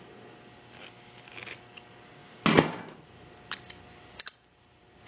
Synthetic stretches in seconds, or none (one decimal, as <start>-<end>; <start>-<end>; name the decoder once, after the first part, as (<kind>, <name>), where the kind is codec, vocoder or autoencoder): none